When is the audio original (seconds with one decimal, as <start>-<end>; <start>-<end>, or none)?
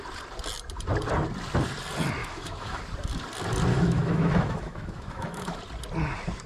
0.0-2.2; 2.8-3.7; 5.6-6.5